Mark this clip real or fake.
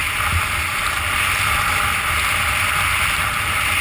real